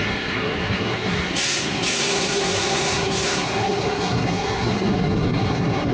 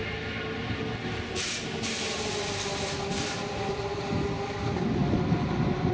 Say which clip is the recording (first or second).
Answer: second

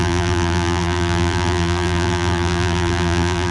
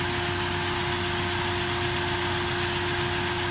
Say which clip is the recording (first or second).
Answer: second